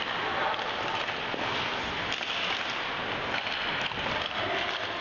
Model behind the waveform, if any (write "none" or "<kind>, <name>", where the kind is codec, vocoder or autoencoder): none